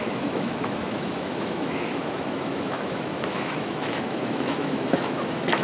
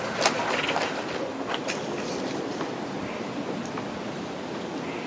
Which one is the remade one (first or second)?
first